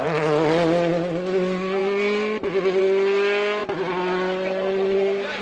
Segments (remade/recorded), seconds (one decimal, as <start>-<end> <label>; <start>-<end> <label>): 0.0-5.4 recorded